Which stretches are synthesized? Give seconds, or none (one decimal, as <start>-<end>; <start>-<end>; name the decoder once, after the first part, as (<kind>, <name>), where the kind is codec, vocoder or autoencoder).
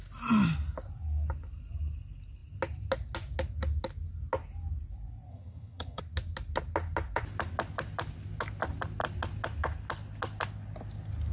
5.3-6.0 (vocoder, HiFi-GAN)